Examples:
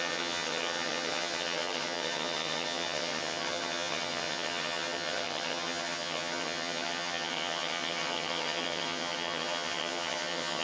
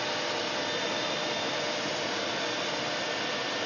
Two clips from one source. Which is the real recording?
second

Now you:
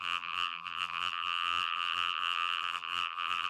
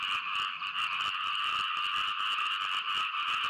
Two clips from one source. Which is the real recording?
second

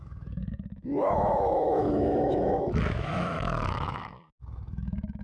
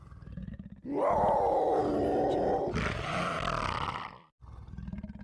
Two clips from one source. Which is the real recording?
second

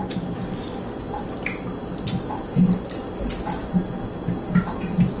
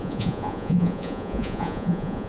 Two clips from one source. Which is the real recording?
first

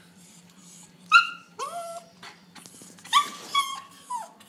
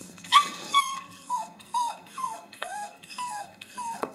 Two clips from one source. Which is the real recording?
first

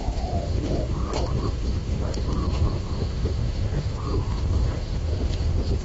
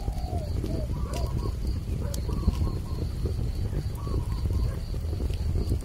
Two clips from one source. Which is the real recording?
second